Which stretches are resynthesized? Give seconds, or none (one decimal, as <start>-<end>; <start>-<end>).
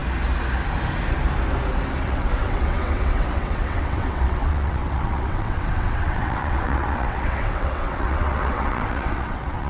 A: 2.0-9.7